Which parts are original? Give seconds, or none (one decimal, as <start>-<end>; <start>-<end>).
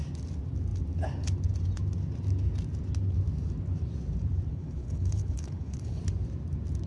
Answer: 0.0-4.5; 6.0-6.9